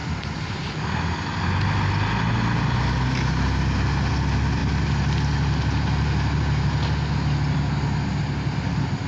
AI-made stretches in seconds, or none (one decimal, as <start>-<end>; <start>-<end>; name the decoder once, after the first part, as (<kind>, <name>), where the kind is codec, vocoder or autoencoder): none